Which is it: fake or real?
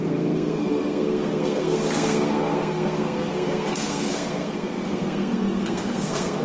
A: fake